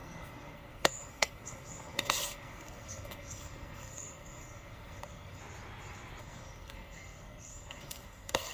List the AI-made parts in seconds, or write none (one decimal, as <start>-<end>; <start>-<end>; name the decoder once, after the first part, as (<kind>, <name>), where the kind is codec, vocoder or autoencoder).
0.0-5.4 (codec, SNAC); 6.2-8.5